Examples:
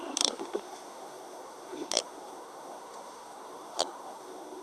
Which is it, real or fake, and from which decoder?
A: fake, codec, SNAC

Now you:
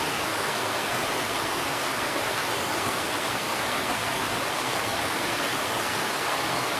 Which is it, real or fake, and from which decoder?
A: fake, codec, SNAC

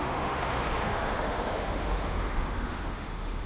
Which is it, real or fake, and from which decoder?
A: fake, autoencoder, DAC-VAE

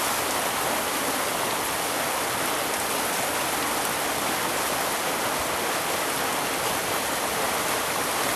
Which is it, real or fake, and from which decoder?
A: real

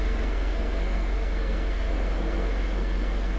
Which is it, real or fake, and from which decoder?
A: fake, codec, SNAC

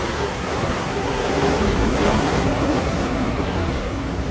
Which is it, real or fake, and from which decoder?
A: fake, codec, SNAC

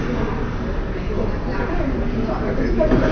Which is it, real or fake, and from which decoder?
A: fake, vocoder, BigVGAN v2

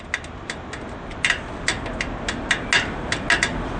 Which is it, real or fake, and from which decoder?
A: real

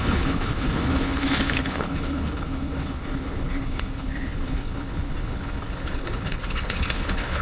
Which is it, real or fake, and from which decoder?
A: fake, codec, HILCodec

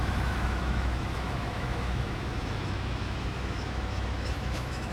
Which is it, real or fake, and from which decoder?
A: fake, autoencoder, DAC-VAE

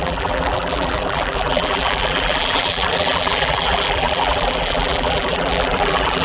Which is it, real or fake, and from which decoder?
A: fake, vocoder, BigVGAN v2